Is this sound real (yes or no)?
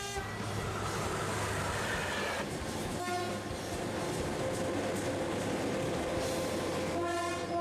yes